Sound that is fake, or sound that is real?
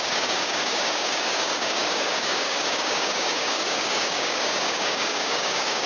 fake